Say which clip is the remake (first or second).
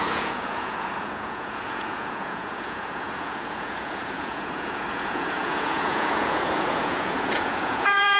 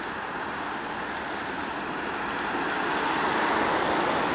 first